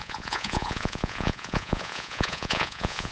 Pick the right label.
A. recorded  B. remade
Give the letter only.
B